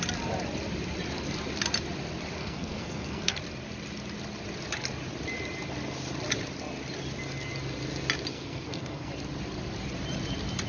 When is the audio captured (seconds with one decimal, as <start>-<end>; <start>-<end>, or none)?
0.0-2.4; 3.4-8.3; 9.1-10.7